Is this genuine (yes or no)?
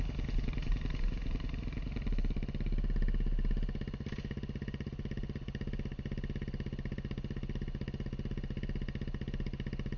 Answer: yes